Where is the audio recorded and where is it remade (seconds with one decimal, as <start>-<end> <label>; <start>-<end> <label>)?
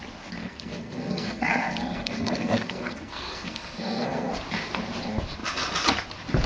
0.0-0.4 recorded; 0.4-4.3 remade; 4.3-6.5 recorded